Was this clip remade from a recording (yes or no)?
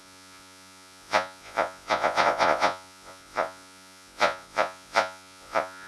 yes